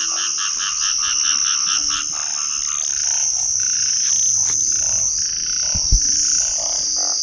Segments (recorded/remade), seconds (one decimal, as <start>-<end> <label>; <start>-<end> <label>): 0.0-7.2 recorded